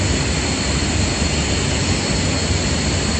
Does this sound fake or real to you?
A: real